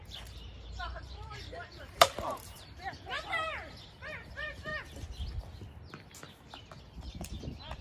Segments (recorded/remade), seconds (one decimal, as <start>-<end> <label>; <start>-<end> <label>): 0.0-4.7 remade; 4.7-6.8 recorded; 6.8-7.8 remade